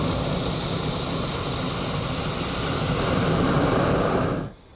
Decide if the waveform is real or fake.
real